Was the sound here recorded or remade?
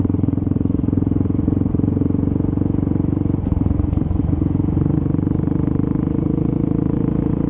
remade